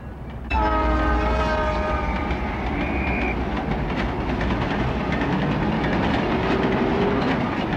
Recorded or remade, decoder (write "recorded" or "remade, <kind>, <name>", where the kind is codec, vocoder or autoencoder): recorded